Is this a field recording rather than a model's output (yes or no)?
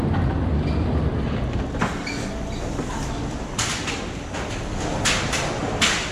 yes